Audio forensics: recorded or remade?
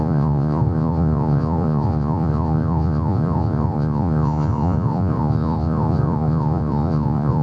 remade